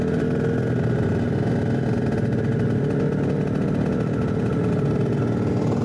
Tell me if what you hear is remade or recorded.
recorded